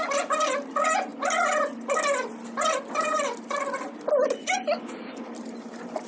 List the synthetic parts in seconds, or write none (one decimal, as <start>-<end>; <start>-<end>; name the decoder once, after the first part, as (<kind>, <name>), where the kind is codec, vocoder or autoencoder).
0.0-1.1 (vocoder, BigVGAN v2); 4.8-6.1